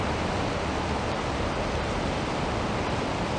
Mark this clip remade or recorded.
recorded